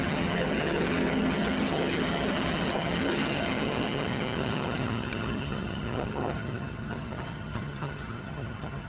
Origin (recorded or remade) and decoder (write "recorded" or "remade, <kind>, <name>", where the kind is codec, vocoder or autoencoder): remade, vocoder, HiFi-GAN